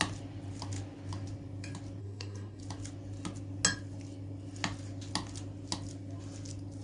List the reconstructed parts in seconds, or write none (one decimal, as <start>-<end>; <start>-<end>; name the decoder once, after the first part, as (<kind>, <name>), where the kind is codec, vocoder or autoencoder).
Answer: 2.0-2.6 (codec, SNAC)